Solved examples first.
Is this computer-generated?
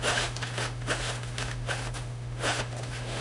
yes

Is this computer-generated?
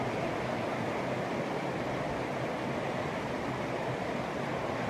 no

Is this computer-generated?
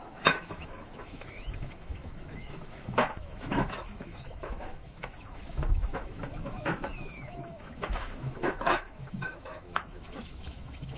yes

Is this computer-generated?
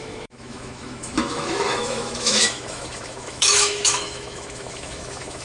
yes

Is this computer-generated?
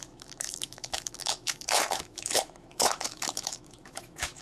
yes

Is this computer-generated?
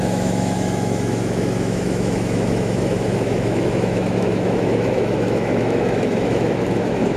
yes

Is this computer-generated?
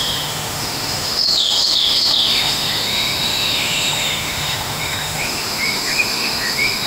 yes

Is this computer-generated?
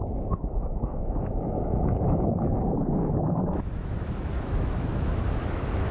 yes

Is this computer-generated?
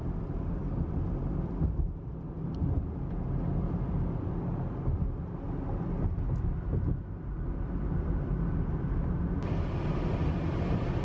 no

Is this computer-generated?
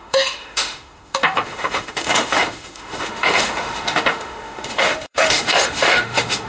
yes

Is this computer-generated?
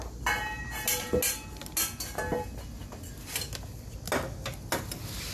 no